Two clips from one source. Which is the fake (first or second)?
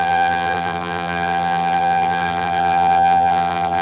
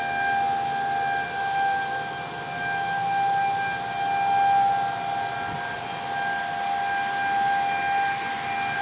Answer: first